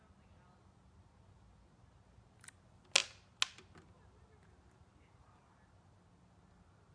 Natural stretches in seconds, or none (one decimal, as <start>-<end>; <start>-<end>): 0.0-6.9